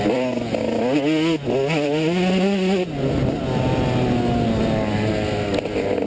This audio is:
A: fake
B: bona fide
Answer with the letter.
B